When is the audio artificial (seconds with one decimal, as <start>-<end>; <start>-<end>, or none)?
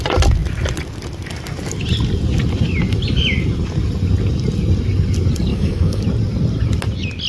5.5-6.0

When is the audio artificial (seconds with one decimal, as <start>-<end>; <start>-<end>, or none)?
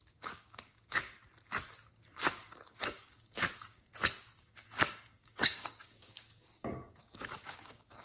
0.0-1.2; 2.1-3.9; 4.4-8.0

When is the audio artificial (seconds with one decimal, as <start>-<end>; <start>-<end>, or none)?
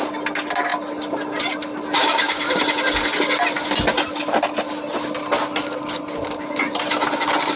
2.0-2.6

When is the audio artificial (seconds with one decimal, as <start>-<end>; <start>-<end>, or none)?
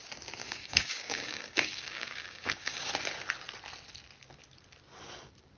0.4-2.9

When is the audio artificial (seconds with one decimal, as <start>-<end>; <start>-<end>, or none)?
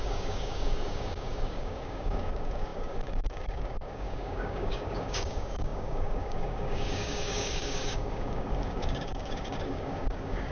0.0-10.5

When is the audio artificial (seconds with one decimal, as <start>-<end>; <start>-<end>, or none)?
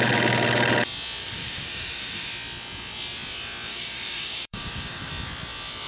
1.2-2.3; 3.7-5.1